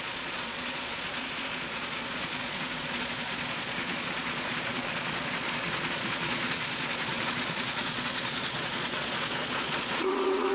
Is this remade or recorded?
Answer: remade